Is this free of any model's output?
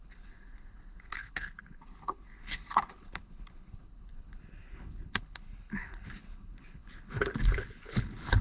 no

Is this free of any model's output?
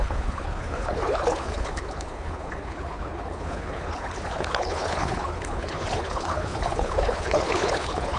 no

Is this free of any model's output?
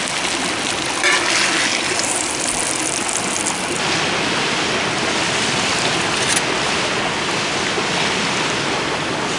yes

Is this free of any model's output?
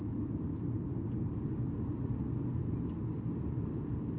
yes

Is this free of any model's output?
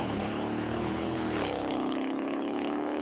no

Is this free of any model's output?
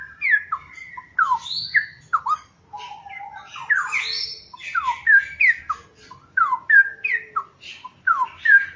yes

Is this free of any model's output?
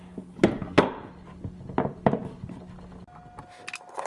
yes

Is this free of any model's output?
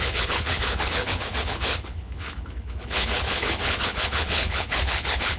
no